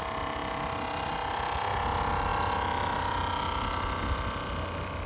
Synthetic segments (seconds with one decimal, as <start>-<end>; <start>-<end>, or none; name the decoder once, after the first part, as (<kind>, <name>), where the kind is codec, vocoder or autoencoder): none